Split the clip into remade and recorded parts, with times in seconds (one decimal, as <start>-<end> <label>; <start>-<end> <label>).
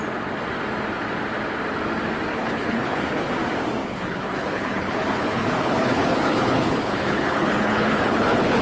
0.0-2.3 recorded; 2.3-3.3 remade; 3.3-3.8 recorded; 3.8-8.6 remade